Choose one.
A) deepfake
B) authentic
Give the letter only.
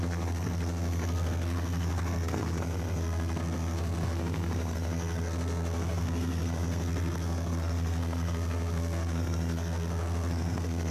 A